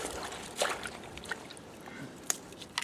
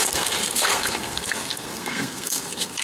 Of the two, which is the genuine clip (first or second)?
first